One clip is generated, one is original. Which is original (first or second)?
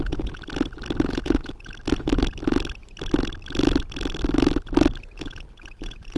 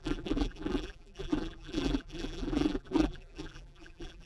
first